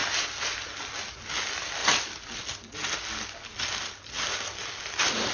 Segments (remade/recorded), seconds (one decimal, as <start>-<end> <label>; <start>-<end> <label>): 0.0-5.3 recorded